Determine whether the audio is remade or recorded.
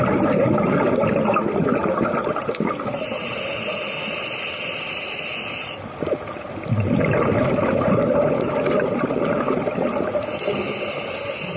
recorded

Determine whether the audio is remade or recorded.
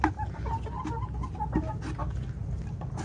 recorded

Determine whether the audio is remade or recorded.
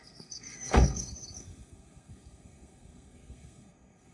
remade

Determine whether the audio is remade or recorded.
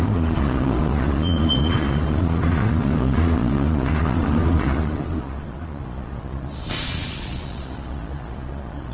remade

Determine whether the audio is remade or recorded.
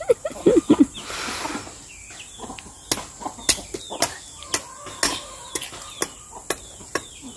recorded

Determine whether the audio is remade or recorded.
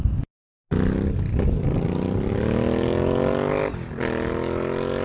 recorded